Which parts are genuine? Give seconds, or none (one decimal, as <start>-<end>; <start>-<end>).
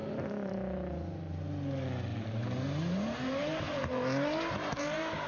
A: 0.5-2.1